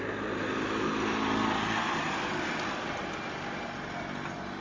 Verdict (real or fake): real